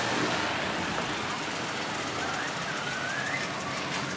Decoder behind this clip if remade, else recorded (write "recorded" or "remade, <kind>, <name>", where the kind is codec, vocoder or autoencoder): recorded